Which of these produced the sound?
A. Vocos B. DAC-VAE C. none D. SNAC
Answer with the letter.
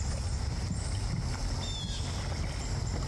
C